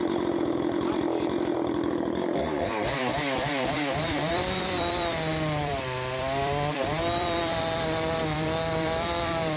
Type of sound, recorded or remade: remade